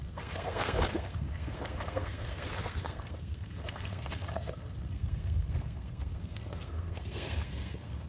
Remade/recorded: remade